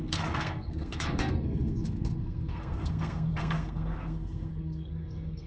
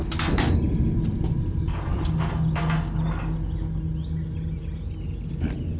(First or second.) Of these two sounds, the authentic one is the second